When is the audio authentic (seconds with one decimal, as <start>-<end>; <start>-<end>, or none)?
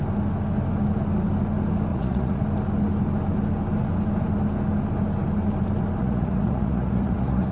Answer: 0.0-1.9; 2.4-6.0